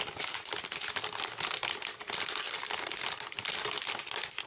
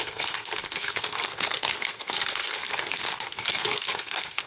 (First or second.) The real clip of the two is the first